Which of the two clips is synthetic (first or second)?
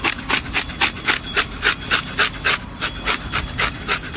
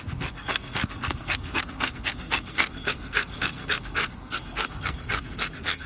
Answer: second